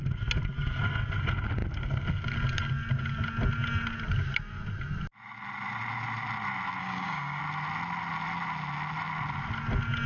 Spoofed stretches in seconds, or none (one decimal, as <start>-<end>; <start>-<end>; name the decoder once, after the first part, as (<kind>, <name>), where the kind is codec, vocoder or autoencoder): 6.8-7.4 (codec, DAC)